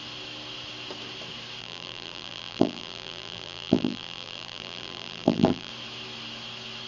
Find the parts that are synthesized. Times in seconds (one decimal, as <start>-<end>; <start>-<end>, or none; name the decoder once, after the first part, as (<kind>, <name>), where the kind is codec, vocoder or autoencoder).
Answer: 1.6-5.7 (vocoder, BigVGAN v2)